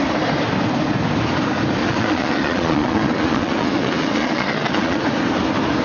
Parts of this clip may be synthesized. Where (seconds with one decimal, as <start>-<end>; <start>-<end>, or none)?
1.8-5.0